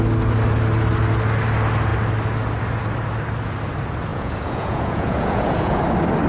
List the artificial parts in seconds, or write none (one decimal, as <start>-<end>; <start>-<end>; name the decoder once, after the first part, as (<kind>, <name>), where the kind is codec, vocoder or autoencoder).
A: 4.1-5.8 (vocoder, Vocos)